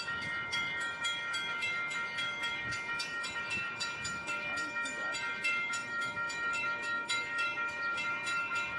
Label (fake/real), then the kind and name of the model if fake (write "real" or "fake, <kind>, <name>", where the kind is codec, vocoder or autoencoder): fake, autoencoder, DAC-VAE